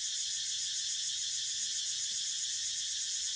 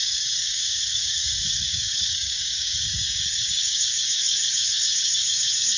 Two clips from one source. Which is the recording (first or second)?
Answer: first